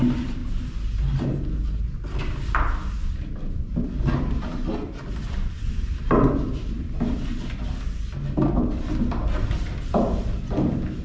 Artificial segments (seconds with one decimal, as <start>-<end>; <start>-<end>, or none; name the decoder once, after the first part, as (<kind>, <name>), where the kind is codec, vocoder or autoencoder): none